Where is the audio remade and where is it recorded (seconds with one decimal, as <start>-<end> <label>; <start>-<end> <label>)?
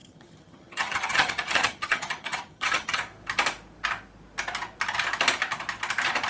0.0-3.0 remade; 3.0-6.3 recorded